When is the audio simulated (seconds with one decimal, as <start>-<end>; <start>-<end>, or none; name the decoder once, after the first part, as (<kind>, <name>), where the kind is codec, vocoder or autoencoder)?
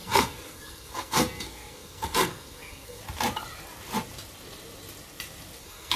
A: 0.0-3.0 (codec, SNAC); 5.6-6.0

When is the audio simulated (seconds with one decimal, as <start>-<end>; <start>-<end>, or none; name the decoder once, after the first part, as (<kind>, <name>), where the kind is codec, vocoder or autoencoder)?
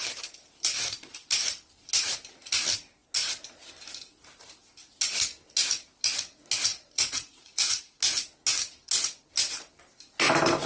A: 6.7-8.0 (vocoder, Vocos)